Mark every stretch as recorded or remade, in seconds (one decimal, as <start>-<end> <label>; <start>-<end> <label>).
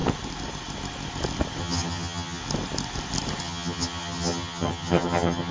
0.0-1.6 recorded; 1.6-2.4 remade; 2.4-3.4 recorded; 3.4-5.5 remade